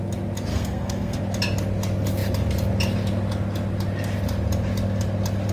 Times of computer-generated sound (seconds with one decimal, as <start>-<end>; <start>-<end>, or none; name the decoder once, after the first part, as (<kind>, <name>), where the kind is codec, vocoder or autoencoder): 0.5-1.2 (codec, SNAC)